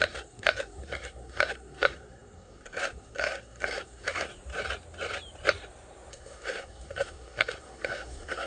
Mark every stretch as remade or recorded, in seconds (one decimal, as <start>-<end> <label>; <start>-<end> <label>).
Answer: 0.0-4.3 remade; 4.3-6.1 recorded; 6.1-8.5 remade

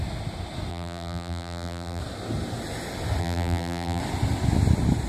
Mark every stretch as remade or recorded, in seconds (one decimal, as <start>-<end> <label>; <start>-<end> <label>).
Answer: 0.0-0.7 recorded; 0.7-2.0 remade; 2.0-3.2 recorded; 3.2-4.0 remade; 4.0-5.1 recorded

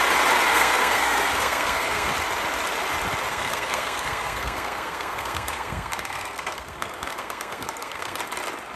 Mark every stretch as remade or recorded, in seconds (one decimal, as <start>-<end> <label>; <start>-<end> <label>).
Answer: 0.0-0.5 recorded; 0.5-2.1 remade; 2.1-3.3 recorded; 3.3-8.2 remade; 8.2-8.8 recorded

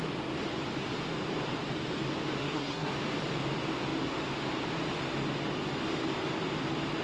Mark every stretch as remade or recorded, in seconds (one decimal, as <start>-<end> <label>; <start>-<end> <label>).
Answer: 0.0-2.4 recorded; 2.4-2.9 remade; 2.9-7.0 recorded

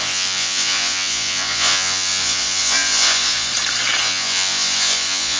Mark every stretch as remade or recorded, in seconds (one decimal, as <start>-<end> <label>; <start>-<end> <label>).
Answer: 0.0-3.5 remade; 3.5-4.0 recorded; 4.0-5.4 remade